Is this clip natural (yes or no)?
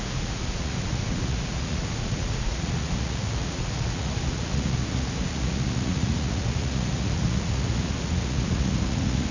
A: no